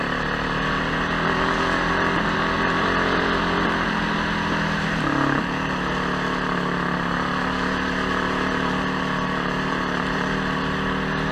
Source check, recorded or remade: recorded